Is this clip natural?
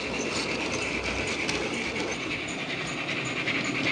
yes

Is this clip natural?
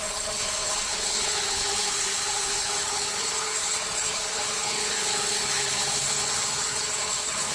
no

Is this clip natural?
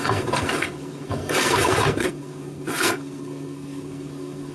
no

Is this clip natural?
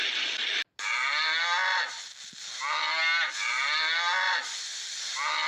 yes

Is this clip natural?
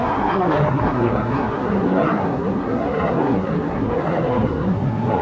no